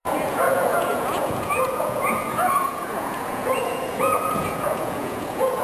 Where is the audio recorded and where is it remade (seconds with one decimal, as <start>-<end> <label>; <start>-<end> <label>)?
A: 0.0-5.6 remade